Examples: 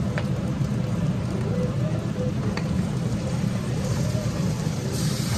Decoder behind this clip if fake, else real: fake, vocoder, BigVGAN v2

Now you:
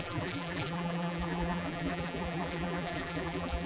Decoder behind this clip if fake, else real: fake, vocoder, BigVGAN v2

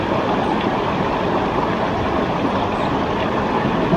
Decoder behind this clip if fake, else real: real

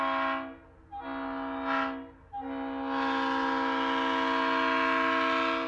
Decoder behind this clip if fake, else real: real